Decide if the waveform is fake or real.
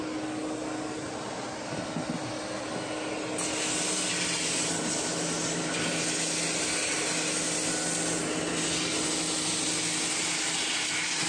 real